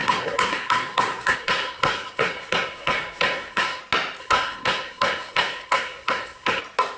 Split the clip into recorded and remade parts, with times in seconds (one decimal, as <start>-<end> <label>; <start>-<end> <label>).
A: 0.0-3.8 remade; 3.8-4.2 recorded; 4.2-6.6 remade; 6.6-7.0 recorded